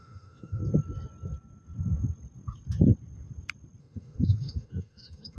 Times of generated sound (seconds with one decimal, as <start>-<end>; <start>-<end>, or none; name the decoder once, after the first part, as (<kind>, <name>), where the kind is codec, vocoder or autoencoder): 0.0-0.6 (autoencoder, DAC-VAE); 3.8-5.4